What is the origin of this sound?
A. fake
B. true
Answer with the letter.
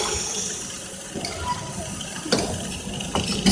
B